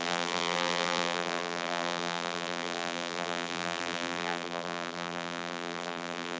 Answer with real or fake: fake